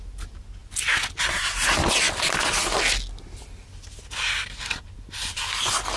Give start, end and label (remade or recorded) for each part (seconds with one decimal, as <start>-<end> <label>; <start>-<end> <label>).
0.0-6.0 recorded